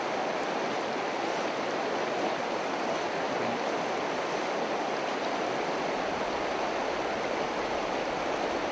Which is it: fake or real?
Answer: real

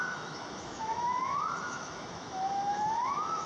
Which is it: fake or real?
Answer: fake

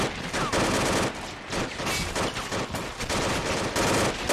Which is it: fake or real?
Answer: real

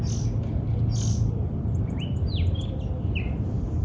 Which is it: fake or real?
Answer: real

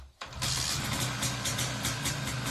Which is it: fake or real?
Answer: real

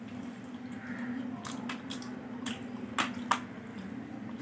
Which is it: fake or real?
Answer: real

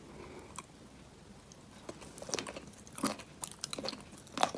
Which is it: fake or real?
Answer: real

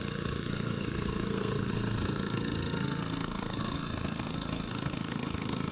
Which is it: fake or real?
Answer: fake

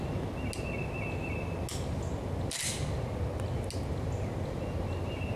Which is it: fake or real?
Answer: real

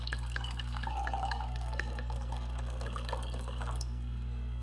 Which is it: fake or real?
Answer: fake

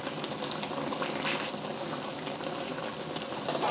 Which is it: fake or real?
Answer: real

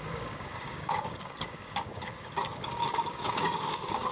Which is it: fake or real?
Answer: fake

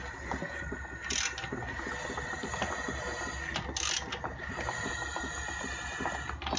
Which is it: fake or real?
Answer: real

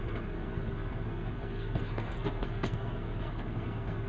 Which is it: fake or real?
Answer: fake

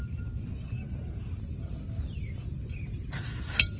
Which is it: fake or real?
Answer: fake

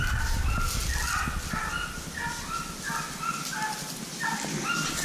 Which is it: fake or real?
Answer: real